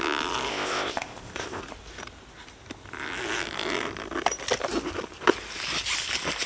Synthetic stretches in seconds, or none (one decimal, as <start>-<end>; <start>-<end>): 0.5-1.6